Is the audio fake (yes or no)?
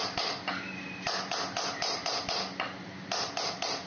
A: no